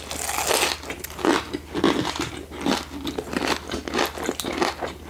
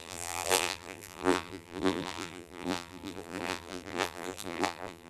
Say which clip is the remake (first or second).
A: second